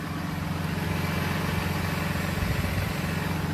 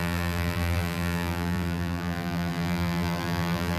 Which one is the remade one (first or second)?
second